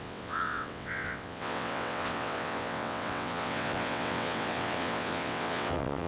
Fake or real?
fake